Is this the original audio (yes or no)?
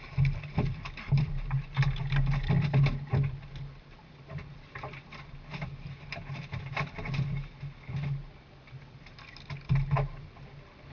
yes